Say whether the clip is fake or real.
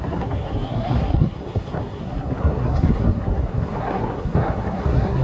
fake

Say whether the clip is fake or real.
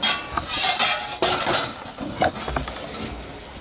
real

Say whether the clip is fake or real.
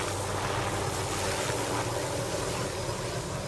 real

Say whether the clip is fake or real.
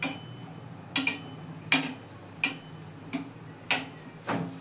real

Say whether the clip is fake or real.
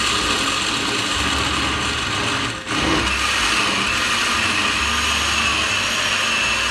real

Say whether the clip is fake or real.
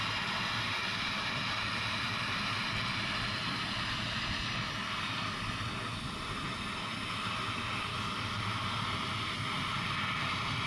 real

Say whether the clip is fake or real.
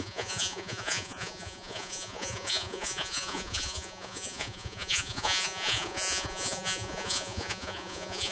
fake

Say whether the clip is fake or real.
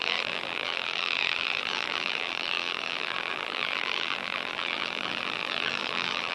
fake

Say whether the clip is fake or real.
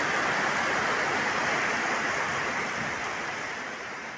real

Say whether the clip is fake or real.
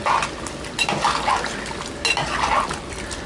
real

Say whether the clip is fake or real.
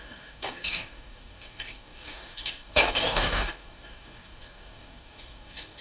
fake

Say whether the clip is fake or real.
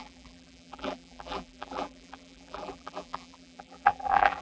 fake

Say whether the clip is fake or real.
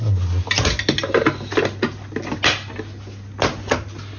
real